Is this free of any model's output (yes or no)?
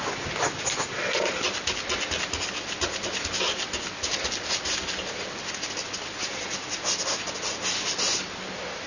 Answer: yes